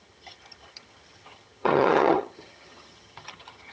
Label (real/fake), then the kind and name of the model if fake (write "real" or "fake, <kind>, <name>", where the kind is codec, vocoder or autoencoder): fake, vocoder, HiFi-GAN